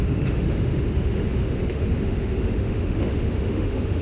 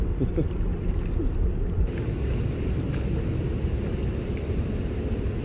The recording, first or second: second